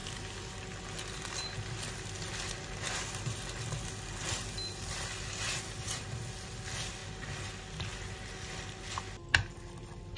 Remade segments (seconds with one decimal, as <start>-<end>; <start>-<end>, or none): none